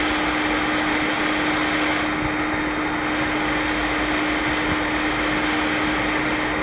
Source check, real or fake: real